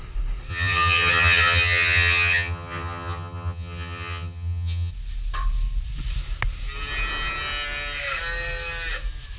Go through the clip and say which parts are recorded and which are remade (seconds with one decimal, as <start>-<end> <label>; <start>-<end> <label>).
0.0-0.5 recorded; 0.5-4.9 remade; 4.9-9.4 recorded